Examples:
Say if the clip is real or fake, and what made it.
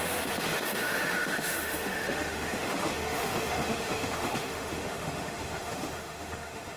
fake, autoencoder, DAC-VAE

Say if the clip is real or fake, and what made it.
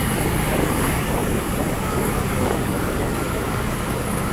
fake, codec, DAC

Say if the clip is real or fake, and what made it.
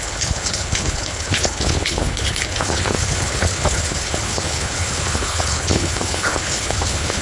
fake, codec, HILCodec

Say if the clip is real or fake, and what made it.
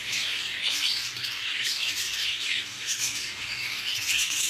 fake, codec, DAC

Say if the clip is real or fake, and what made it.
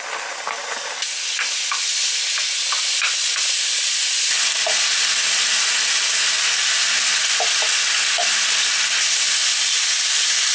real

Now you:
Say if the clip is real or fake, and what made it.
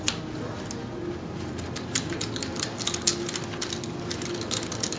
real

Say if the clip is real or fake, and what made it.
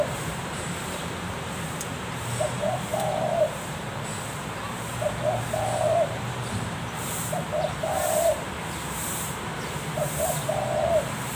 fake, vocoder, BigVGAN v2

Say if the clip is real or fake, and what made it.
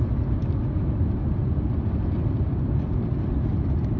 real